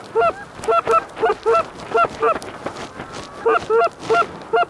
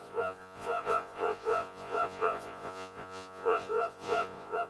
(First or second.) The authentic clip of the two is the first